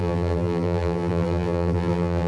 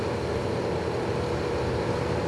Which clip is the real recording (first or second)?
second